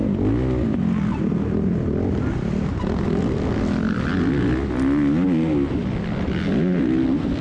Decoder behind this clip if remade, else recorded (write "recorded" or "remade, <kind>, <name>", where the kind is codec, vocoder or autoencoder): recorded